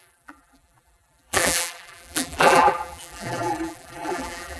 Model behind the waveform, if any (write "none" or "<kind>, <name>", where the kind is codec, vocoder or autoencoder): vocoder, BigVGAN v2